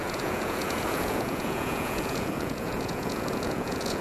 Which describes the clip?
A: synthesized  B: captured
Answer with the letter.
A